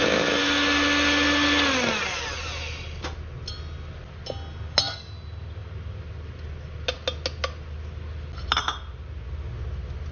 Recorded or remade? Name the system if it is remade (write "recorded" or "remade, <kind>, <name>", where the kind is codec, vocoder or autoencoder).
recorded